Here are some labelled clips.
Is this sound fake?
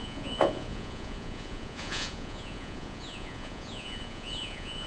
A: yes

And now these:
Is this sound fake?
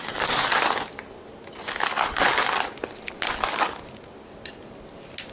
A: no